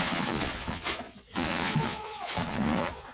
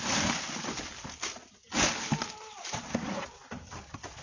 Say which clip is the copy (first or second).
first